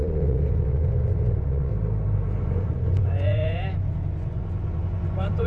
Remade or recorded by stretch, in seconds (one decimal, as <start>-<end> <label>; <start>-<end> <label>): 0.0-1.7 remade; 1.7-2.3 recorded; 2.3-5.5 remade